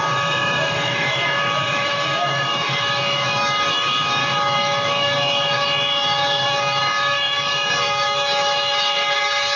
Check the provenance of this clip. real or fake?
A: fake